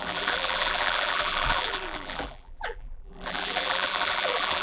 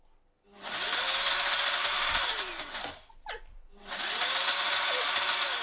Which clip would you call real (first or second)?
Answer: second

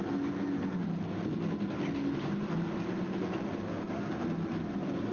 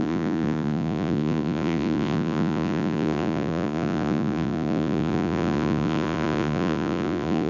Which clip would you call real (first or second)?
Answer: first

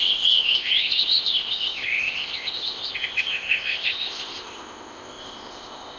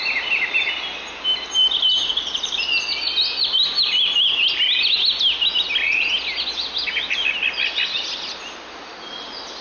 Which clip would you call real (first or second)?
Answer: second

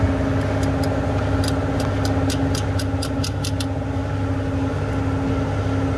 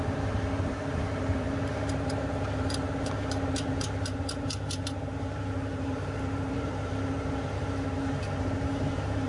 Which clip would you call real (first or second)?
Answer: first